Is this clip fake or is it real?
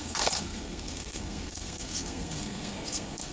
fake